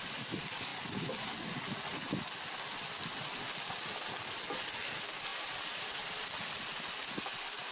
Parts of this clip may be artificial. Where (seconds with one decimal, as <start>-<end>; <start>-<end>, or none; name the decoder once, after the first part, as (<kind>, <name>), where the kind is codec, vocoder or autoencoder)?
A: 5.3-6.3 (vocoder, BigVGAN v2)